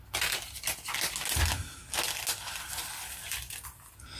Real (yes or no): yes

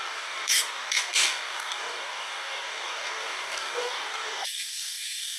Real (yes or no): no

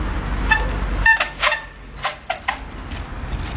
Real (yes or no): yes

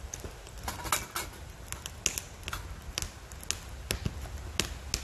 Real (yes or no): yes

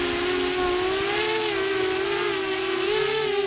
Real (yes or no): yes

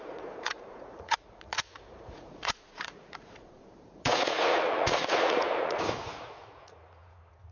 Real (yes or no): no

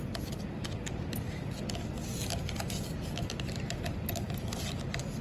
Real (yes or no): yes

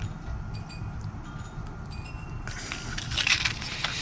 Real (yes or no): yes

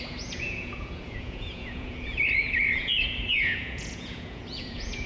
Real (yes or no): no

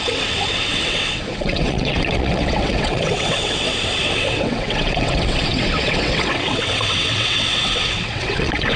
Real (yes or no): no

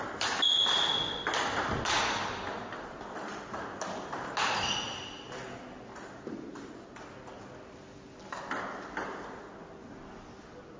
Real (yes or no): yes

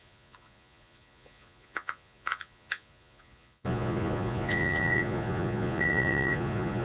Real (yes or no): no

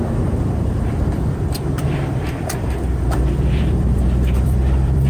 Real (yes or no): no